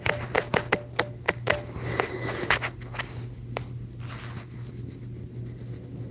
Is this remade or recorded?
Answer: recorded